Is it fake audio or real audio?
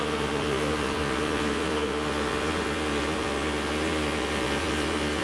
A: fake